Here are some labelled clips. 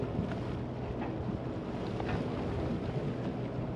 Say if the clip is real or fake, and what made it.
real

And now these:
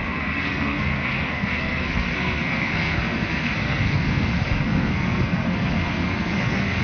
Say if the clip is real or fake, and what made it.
fake, codec, SNAC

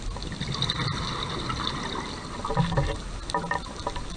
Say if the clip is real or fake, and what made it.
real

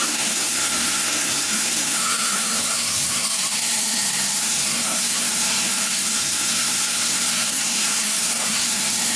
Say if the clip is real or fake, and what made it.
fake, codec, SNAC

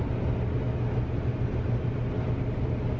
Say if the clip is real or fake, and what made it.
real